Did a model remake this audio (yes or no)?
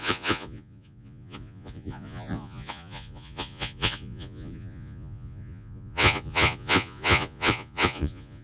yes